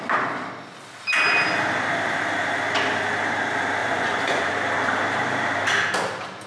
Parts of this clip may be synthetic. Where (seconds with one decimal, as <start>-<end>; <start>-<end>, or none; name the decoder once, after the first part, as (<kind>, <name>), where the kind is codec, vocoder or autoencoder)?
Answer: 3.8-4.5 (vocoder, Vocos)